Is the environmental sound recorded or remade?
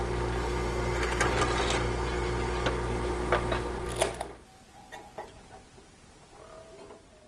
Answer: recorded